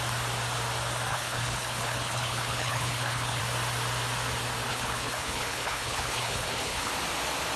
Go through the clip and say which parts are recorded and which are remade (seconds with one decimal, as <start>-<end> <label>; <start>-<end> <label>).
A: 0.0-1.1 recorded; 1.1-3.4 remade; 3.4-4.7 recorded; 4.7-6.9 remade; 6.9-7.6 recorded